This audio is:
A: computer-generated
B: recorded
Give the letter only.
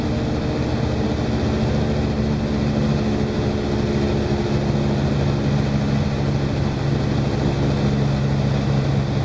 B